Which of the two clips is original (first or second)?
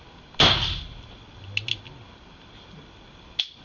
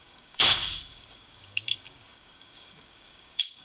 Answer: first